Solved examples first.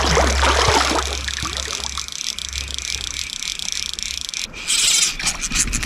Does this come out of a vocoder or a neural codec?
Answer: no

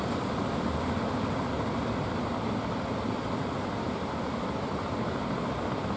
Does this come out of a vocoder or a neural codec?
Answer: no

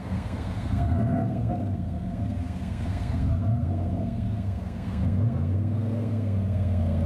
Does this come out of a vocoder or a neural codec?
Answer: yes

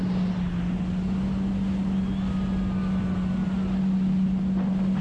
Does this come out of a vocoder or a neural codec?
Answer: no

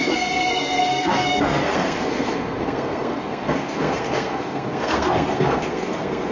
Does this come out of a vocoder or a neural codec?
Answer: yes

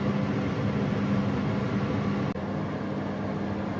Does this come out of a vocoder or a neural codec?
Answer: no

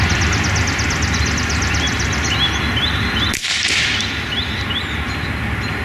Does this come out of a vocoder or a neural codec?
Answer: no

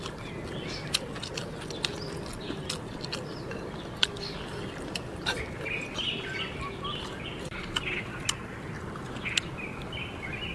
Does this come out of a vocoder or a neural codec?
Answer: no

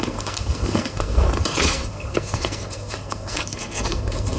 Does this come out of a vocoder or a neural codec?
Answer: yes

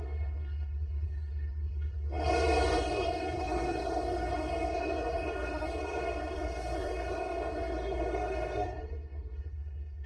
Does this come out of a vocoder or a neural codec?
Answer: yes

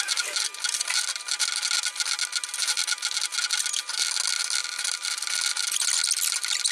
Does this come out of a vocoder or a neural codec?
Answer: no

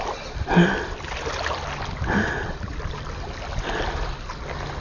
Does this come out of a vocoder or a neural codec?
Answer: no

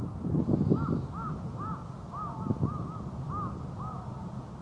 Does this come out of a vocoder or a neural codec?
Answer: no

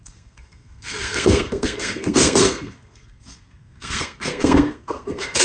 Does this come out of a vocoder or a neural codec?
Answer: yes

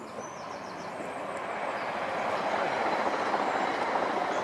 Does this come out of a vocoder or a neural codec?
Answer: no